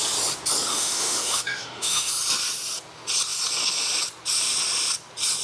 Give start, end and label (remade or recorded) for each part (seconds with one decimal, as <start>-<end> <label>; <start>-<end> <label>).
0.0-0.7 recorded; 0.7-2.1 remade; 2.1-5.4 recorded